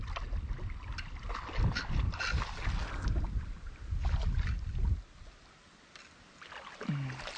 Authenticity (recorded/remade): recorded